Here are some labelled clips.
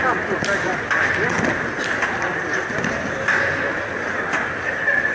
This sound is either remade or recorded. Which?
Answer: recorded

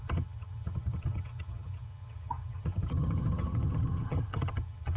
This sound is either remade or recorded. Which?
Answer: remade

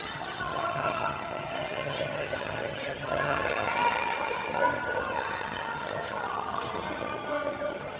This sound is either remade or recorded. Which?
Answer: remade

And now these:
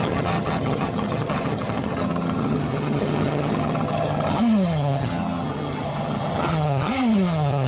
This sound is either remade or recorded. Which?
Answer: remade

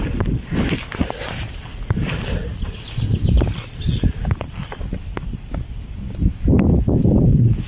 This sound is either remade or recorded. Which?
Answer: recorded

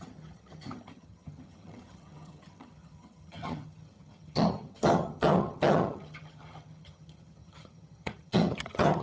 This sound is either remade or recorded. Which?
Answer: remade